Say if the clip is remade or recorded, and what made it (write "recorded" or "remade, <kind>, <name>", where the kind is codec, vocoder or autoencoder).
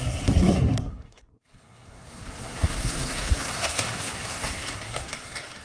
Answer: remade, codec, SNAC